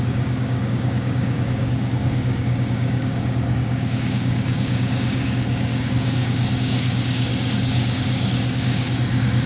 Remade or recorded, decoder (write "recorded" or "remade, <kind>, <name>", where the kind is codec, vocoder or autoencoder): remade, codec, DAC